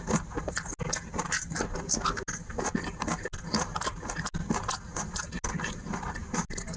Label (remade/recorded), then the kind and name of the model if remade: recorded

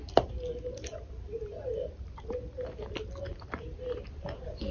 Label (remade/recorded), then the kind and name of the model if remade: recorded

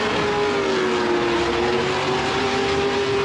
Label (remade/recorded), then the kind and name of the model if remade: recorded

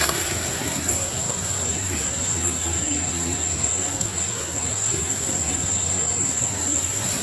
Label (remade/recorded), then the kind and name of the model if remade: remade, codec, SNAC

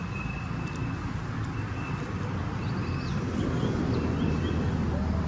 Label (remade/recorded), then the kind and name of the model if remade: recorded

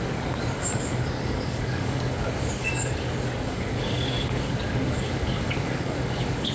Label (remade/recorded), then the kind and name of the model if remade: remade, codec, DAC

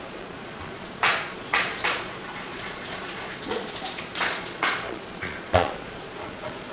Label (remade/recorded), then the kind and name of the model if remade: remade, vocoder, Vocos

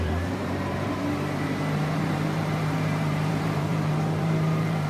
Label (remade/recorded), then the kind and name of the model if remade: remade, vocoder, BigVGAN v2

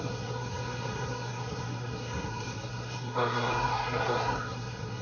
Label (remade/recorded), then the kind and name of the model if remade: remade, codec, SNAC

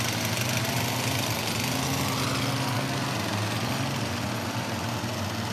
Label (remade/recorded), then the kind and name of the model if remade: recorded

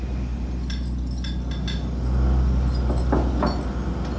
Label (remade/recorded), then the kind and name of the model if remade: recorded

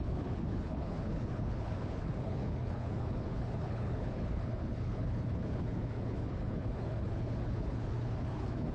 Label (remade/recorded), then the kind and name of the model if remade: remade, codec, HILCodec